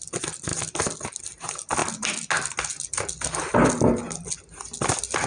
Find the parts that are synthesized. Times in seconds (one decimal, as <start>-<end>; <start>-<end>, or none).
none